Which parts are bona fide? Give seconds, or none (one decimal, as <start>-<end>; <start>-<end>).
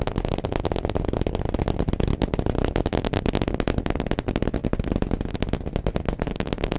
0.0-4.6; 5.3-6.8